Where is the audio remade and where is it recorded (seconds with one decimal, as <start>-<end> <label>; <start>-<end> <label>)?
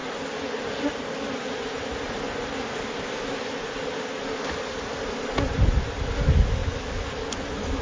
0.0-7.8 recorded